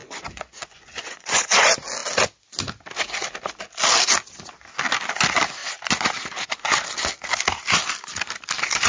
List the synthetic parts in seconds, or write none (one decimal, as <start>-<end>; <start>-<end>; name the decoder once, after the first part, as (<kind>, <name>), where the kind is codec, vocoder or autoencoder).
0.0-1.6 (vocoder, Vocos)